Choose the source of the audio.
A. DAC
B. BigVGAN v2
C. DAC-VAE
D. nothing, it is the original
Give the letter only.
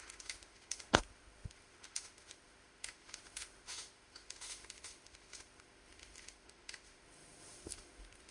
C